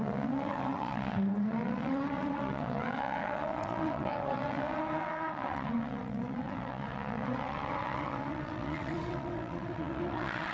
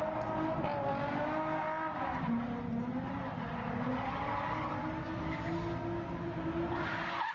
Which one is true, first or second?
second